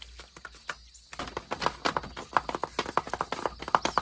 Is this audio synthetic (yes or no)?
no